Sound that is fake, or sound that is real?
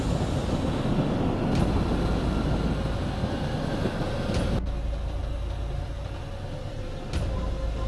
real